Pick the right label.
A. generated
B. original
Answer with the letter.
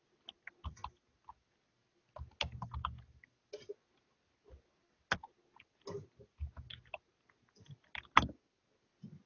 B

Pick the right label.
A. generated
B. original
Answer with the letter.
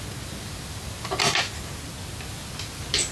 B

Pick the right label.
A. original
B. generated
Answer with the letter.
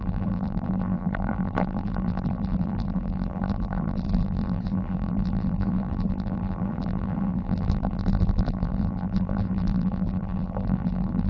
B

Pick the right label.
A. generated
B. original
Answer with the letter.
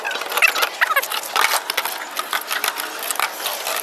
B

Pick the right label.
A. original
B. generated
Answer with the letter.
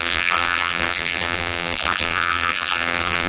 B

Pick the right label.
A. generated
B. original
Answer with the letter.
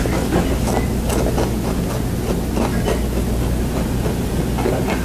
B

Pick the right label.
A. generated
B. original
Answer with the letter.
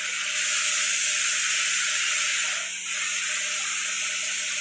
B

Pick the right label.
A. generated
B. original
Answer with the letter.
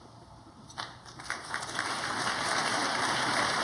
A